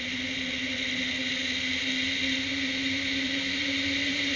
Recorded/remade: recorded